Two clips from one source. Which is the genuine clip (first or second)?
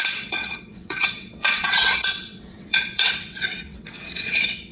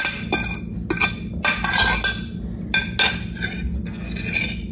second